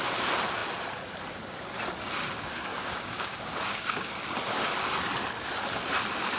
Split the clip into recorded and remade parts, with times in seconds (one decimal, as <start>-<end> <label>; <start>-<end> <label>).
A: 0.0-2.7 recorded; 2.7-4.1 remade; 4.1-6.4 recorded